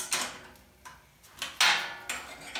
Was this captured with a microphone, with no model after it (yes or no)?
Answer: yes